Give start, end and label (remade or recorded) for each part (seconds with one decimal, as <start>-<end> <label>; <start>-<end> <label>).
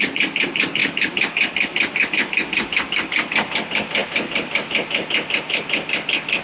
0.0-6.4 recorded